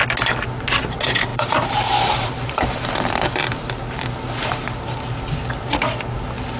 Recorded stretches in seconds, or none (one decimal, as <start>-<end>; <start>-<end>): 0.0-1.3; 5.3-6.6